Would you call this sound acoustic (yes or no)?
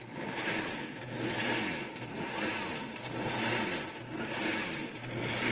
yes